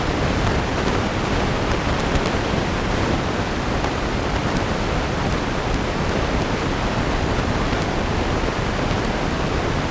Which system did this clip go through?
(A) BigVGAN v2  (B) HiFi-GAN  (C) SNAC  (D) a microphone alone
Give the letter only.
A